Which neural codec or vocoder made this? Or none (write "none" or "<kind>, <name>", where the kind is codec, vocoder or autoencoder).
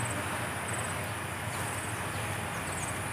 none